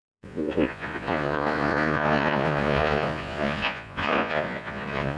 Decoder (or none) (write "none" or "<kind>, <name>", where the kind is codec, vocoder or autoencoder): vocoder, Vocos